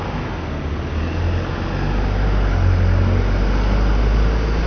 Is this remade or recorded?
recorded